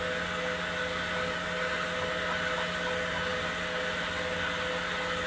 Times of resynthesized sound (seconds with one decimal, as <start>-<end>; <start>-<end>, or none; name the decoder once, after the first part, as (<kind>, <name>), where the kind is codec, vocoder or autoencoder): none